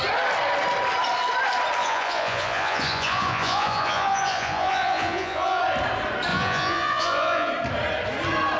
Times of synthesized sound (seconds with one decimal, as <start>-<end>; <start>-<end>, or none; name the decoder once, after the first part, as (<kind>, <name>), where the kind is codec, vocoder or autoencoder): 1.8-5.6 (vocoder, Vocos); 6.3-7.5